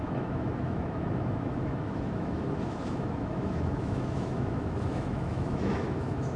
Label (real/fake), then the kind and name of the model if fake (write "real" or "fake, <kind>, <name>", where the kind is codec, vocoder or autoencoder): fake, autoencoder, DAC-VAE